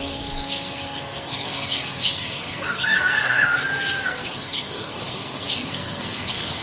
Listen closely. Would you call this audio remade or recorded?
remade